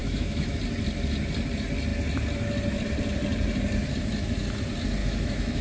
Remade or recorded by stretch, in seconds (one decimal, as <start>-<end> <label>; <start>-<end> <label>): 0.0-0.6 remade; 0.6-5.0 recorded; 5.0-5.6 remade

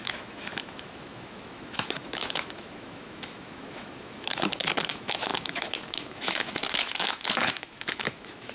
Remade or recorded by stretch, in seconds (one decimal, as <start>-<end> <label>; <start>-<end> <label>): 0.0-8.5 remade

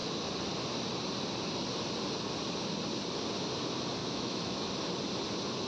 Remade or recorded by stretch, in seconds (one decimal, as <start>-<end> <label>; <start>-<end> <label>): 0.0-4.0 recorded; 4.0-4.7 remade; 4.7-5.7 recorded

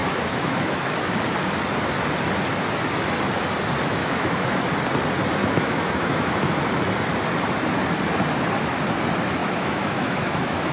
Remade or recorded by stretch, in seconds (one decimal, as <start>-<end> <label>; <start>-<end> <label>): 0.0-0.9 remade; 0.9-4.0 recorded; 4.0-4.6 remade; 4.6-5.4 recorded; 5.4-6.6 remade; 6.6-9.4 recorded; 9.4-10.7 remade

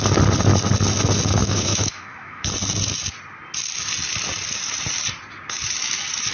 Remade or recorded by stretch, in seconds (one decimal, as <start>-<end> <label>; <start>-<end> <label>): 0.0-1.4 recorded; 1.4-2.4 remade; 2.4-6.3 recorded

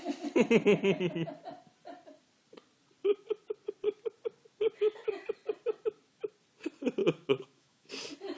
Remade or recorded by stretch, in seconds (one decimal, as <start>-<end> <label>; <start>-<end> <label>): 0.0-7.0 recorded; 7.0-7.9 remade; 7.9-8.4 recorded

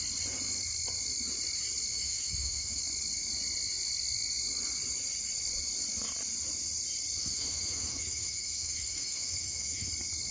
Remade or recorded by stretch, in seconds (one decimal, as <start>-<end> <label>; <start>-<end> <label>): 0.0-1.9 recorded; 1.9-2.8 remade; 2.8-7.2 recorded; 7.2-9.9 remade; 9.9-10.3 recorded